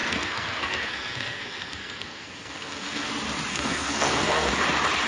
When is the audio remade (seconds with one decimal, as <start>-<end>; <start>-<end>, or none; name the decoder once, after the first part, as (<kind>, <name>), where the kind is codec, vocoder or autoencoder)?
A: 0.0-3.1 (codec, SNAC); 3.5-4.5